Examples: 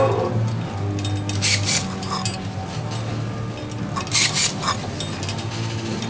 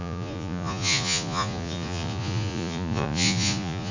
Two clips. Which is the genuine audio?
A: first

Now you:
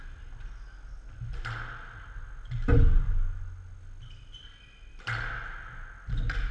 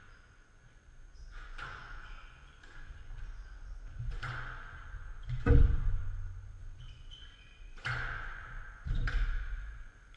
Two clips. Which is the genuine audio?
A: first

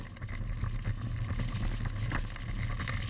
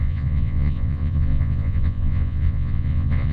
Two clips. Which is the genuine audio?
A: first